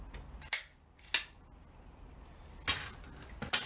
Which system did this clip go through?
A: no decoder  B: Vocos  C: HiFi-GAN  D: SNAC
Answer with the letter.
A